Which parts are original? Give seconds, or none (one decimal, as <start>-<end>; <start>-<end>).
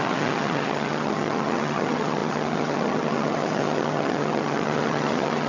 none